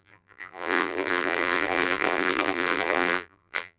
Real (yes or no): no